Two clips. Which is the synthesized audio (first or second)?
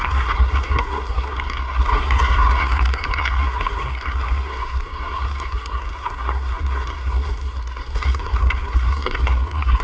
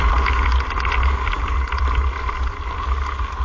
first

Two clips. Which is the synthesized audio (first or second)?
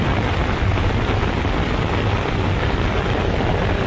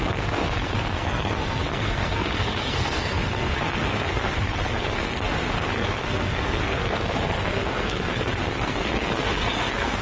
second